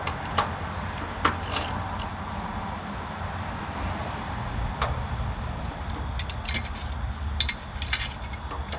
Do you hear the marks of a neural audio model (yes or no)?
no